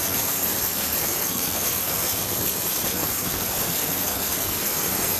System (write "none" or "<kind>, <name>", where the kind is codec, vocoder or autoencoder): codec, SNAC